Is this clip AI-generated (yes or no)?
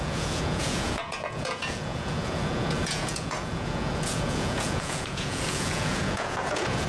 yes